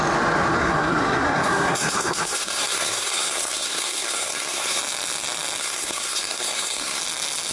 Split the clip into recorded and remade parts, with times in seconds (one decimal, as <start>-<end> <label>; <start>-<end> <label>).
0.0-0.6 recorded; 0.6-4.8 remade; 4.8-5.6 recorded; 5.6-7.0 remade; 7.0-7.5 recorded